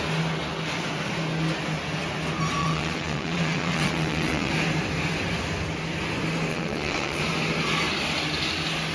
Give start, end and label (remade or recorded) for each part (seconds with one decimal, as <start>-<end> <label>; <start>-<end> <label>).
0.0-2.6 recorded; 2.6-4.5 remade; 4.5-6.5 recorded; 6.5-7.2 remade; 7.2-8.9 recorded

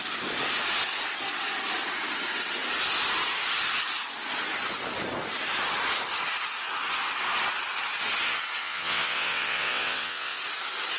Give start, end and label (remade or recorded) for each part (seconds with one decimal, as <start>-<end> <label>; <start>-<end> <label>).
0.0-8.6 recorded; 8.6-10.4 remade; 10.4-11.0 recorded

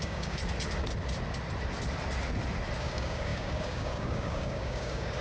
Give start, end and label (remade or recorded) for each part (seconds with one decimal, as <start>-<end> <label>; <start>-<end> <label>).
0.0-0.4 remade; 0.4-2.8 recorded; 2.8-5.2 remade

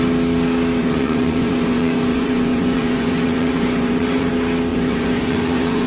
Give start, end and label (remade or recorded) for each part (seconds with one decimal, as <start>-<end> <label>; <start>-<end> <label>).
0.0-0.8 recorded; 0.8-4.3 remade; 4.3-4.7 recorded; 4.7-5.9 remade

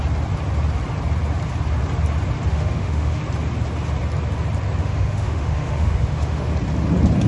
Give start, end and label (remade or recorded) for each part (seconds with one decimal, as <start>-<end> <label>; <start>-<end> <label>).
0.0-2.5 recorded; 2.5-3.2 remade; 3.2-4.8 recorded; 4.8-6.5 remade; 6.5-7.3 recorded

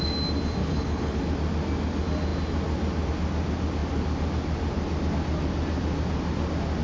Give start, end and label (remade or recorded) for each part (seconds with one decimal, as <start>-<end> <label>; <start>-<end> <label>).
0.0-0.6 recorded; 0.6-1.2 remade; 1.2-6.8 recorded

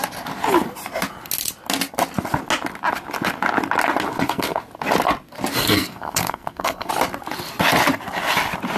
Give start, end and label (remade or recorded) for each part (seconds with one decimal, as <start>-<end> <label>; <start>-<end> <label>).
0.0-4.1 recorded; 4.1-4.6 remade; 4.6-5.6 recorded; 5.6-6.9 remade; 6.9-8.8 recorded